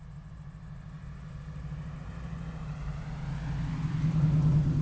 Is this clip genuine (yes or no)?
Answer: yes